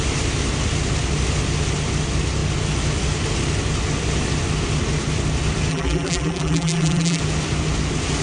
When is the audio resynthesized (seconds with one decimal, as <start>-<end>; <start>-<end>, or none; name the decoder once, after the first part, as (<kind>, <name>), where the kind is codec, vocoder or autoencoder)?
5.7-7.2 (vocoder, BigVGAN v2)